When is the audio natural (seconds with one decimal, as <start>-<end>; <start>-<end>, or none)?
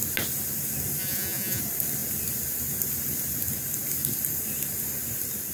0.0-1.0; 1.6-5.5